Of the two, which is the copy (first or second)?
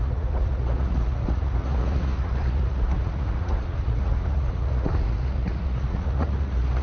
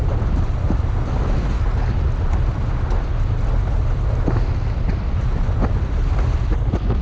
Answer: first